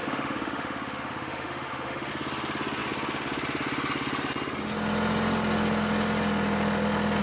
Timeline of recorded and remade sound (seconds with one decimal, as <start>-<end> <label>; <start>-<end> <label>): 0.0-2.1 remade; 2.1-7.2 recorded